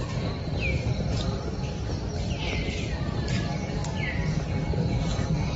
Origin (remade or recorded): recorded